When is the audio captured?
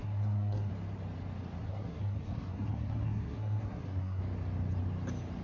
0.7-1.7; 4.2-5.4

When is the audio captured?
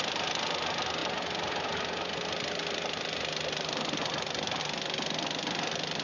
0.0-6.0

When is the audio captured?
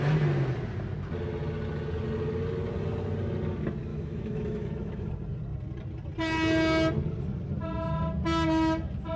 0.0-3.9; 5.1-9.2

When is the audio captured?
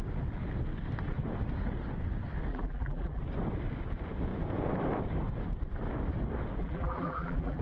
0.0-2.5; 3.2-6.6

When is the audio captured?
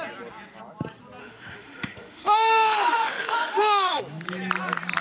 0.0-1.2; 4.0-5.0